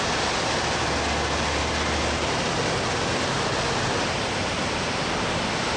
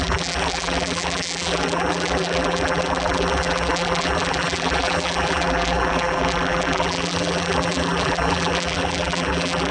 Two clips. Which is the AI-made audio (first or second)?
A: second